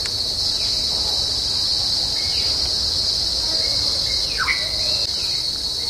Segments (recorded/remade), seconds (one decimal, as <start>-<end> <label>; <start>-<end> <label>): 0.0-5.9 recorded